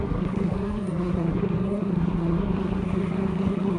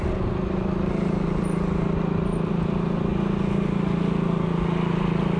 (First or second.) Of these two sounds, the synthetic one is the first